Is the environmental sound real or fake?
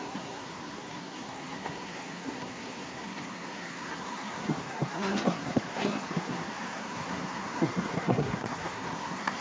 fake